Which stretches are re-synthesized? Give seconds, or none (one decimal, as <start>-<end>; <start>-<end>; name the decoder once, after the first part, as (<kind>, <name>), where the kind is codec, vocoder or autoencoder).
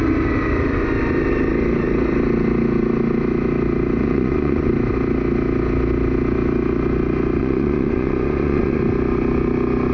4.0-4.7 (vocoder, Vocos); 7.4-8.8